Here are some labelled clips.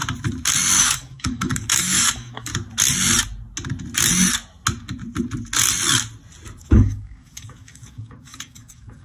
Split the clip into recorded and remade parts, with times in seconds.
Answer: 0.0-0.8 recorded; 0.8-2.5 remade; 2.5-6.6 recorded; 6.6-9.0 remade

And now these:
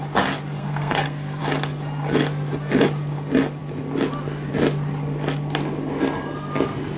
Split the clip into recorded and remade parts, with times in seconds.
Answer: 0.0-0.6 recorded; 0.6-1.4 remade; 1.4-7.0 recorded

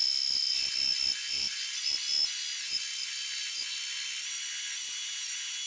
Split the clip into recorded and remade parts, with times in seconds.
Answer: 0.0-5.7 recorded

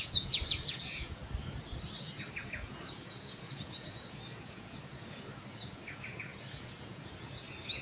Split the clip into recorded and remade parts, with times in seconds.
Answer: 0.0-1.2 remade; 1.2-2.0 recorded; 2.0-7.8 remade

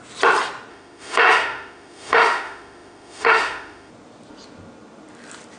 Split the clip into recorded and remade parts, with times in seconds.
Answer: 0.0-0.7 recorded; 0.7-3.9 remade; 3.9-5.6 recorded

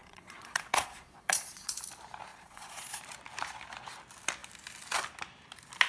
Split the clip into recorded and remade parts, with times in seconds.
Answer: 0.0-1.8 remade; 1.8-2.3 recorded; 2.3-3.0 remade; 3.0-5.9 recorded

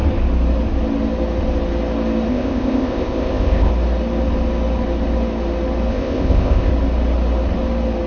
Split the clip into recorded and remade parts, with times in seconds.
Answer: 0.0-2.3 recorded; 2.3-3.7 remade; 3.7-5.9 recorded; 5.9-6.7 remade; 6.7-8.1 recorded